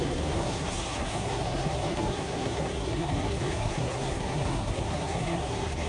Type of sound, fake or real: fake